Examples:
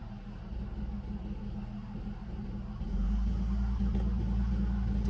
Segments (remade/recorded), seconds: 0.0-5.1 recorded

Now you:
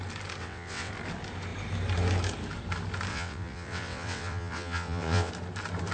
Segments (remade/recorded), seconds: 0.0-0.4 recorded; 0.4-0.9 remade; 0.9-3.1 recorded; 3.1-5.3 remade; 5.3-5.9 recorded

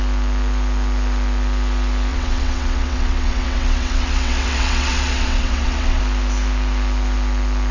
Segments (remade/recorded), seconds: 0.0-2.1 recorded; 2.1-6.0 remade; 6.0-7.7 recorded

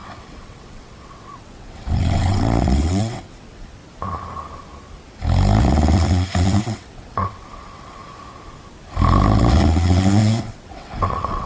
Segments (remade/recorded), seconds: 0.0-3.8 remade; 3.8-6.6 recorded; 6.6-8.0 remade; 8.0-10.4 recorded; 10.4-11.5 remade

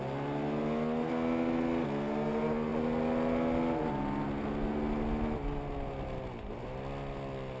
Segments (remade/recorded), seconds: 0.0-7.6 recorded

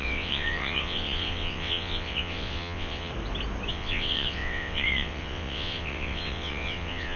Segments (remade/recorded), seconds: 0.0-3.1 remade; 3.1-3.7 recorded; 3.7-7.2 remade

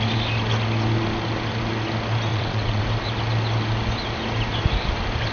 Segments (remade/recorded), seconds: 0.0-2.3 recorded; 2.3-2.8 remade; 2.8-5.3 recorded